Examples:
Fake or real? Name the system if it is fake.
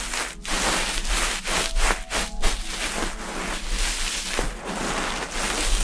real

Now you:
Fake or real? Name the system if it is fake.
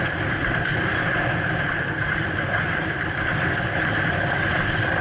real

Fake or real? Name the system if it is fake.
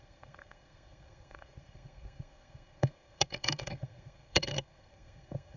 fake, codec, SNAC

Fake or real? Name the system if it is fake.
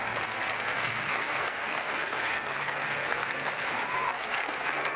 fake, codec, SNAC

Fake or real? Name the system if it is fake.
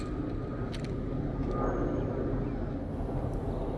real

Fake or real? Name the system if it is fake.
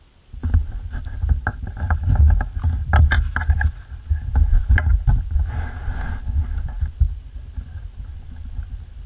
real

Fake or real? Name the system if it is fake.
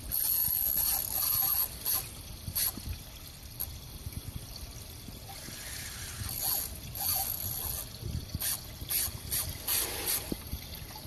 real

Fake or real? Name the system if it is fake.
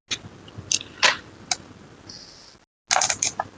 real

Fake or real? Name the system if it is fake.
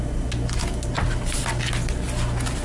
real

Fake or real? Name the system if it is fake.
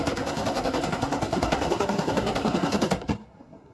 fake, codec, SNAC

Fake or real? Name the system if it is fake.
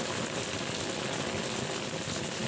real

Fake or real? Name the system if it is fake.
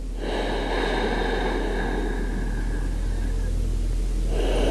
real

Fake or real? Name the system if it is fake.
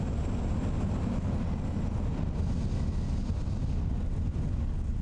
real